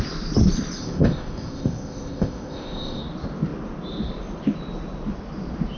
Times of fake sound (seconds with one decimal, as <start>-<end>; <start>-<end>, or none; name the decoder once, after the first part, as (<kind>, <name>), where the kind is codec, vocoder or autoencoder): 0.8-3.0 (codec, ZipCodec)